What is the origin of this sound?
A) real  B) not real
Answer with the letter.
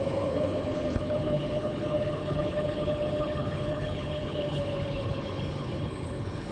B